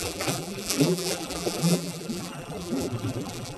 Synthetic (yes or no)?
yes